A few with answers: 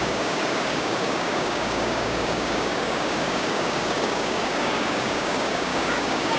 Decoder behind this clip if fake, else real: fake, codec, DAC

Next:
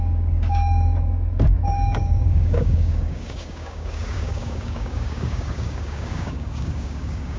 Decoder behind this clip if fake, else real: fake, codec, DAC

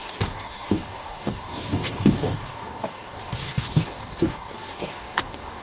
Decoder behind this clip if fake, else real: fake, codec, DAC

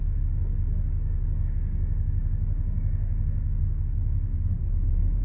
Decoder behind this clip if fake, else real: fake, codec, DAC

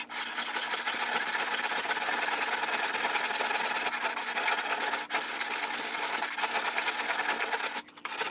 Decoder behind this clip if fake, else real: real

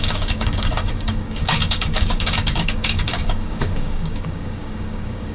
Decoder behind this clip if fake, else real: fake, codec, DAC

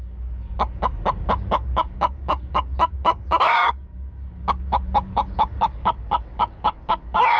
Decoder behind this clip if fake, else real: fake, codec, DAC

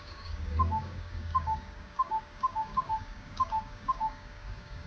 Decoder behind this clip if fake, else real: fake, codec, DAC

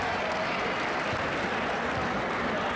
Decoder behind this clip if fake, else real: real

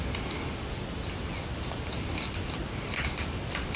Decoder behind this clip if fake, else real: real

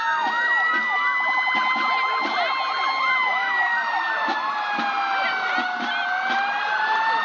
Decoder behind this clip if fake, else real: real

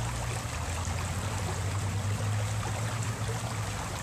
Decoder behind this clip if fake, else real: real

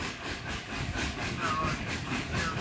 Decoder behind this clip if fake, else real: fake, codec, DAC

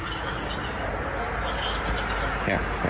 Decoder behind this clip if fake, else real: real